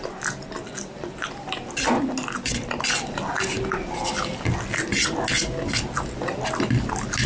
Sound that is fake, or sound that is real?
real